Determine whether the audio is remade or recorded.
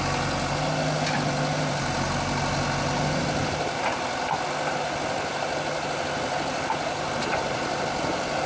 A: recorded